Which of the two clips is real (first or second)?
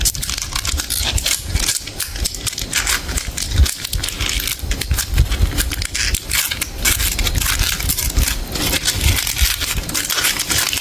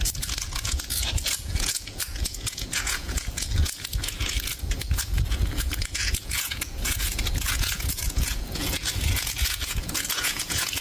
first